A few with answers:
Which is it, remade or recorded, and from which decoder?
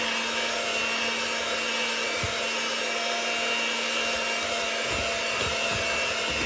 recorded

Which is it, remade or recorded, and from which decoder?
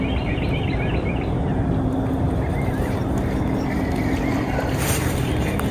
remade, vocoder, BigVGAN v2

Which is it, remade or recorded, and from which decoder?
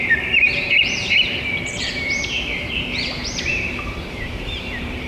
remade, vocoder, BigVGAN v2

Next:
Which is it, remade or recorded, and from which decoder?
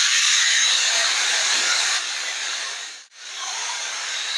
remade, codec, DAC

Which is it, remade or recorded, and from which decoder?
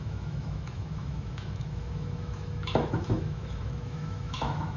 remade, autoencoder, DAC-VAE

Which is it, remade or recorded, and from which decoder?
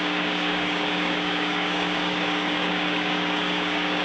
remade, codec, DAC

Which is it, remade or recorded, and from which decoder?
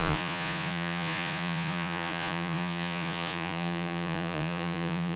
remade, vocoder, Vocos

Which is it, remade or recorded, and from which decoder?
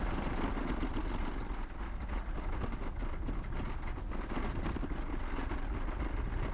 recorded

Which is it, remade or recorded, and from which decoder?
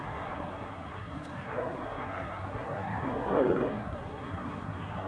remade, codec, SNAC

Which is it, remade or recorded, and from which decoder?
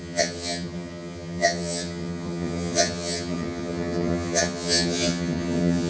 remade, vocoder, HiFi-GAN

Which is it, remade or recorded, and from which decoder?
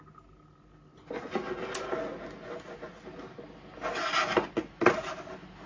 recorded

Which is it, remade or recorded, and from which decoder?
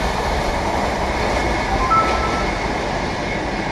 recorded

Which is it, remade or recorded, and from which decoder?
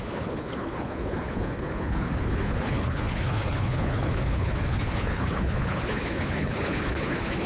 remade, codec, HILCodec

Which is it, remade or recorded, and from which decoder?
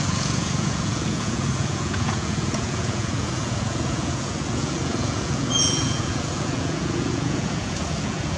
remade, vocoder, Vocos